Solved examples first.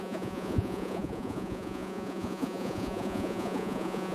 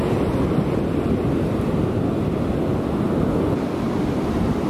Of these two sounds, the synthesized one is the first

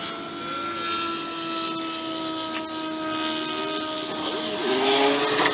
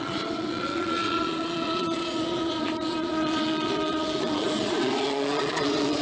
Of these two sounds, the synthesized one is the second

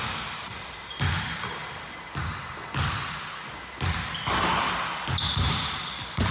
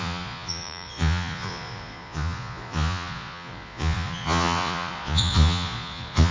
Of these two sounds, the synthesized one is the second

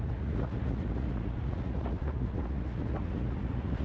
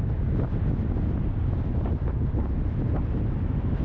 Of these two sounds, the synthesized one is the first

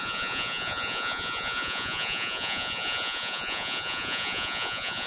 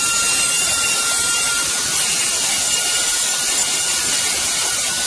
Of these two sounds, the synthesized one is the first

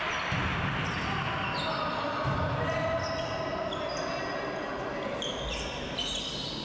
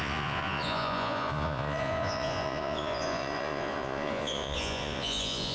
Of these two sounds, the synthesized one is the second